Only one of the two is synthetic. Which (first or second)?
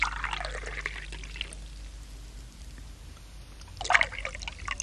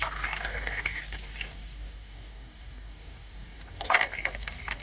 second